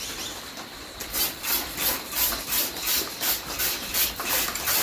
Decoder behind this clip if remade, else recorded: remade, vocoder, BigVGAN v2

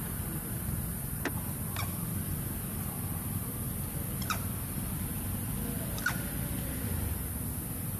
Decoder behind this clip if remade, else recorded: remade, vocoder, BigVGAN v2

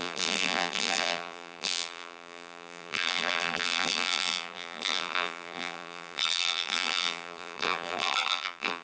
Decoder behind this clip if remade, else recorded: remade, vocoder, BigVGAN v2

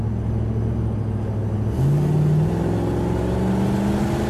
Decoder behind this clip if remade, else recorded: recorded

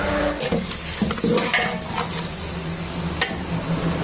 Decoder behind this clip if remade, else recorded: recorded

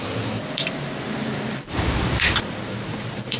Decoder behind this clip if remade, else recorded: remade, vocoder, BigVGAN v2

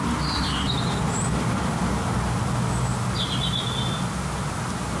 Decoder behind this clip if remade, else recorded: recorded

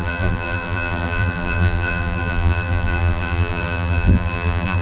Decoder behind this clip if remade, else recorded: remade, vocoder, BigVGAN v2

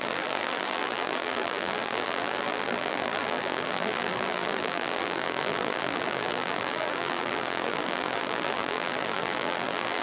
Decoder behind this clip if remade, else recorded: remade, vocoder, BigVGAN v2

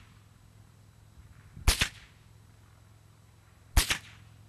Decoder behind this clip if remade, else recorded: recorded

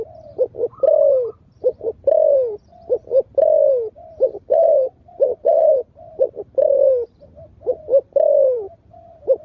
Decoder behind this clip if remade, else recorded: remade, vocoder, BigVGAN v2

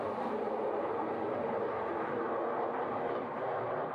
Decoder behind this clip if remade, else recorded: recorded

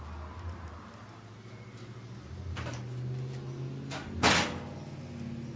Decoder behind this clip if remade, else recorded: recorded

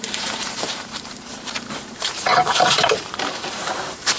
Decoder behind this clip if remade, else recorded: remade, vocoder, BigVGAN v2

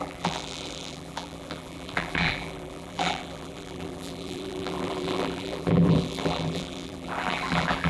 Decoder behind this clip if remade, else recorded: remade, vocoder, BigVGAN v2